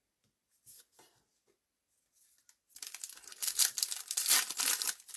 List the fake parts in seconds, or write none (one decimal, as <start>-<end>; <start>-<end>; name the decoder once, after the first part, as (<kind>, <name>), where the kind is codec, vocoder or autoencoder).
none